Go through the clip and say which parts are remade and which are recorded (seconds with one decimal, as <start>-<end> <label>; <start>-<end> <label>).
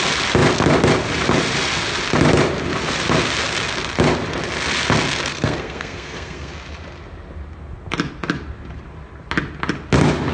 0.0-5.3 recorded; 5.3-6.5 remade; 6.5-10.3 recorded